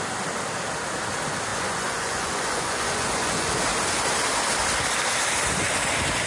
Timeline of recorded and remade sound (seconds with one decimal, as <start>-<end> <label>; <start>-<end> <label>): 0.0-1.5 recorded; 1.5-3.5 remade; 3.5-6.3 recorded